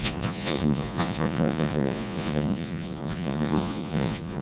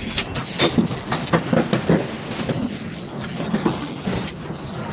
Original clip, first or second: second